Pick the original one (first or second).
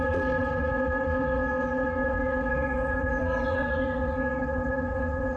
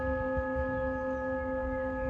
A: second